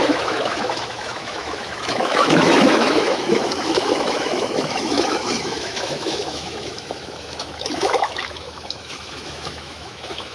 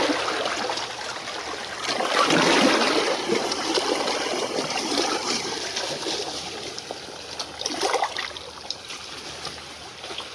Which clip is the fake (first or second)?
first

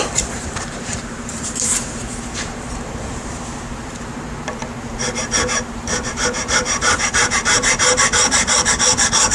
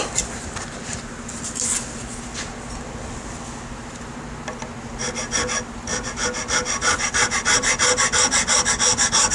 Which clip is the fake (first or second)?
first